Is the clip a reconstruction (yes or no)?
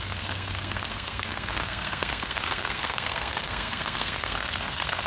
yes